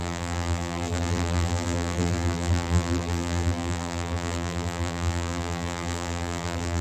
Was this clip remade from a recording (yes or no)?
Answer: yes